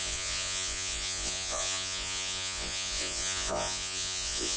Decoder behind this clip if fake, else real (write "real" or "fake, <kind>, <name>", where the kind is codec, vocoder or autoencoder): fake, vocoder, Vocos